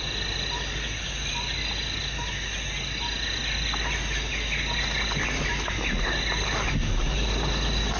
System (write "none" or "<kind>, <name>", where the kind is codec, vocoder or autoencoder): none